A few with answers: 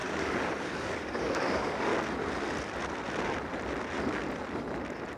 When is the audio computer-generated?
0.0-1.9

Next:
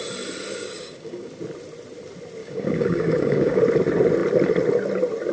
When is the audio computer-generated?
0.5-1.3; 2.4-3.6

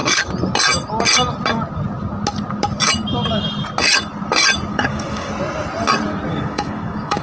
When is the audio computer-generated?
4.7-5.3; 6.3-7.2

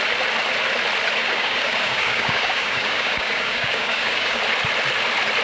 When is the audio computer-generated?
1.2-4.4

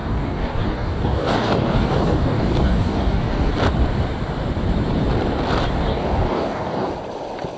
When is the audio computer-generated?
0.0-3.5; 5.9-6.9